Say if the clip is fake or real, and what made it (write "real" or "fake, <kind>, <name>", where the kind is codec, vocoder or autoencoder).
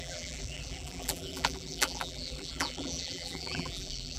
fake, vocoder, BigVGAN v2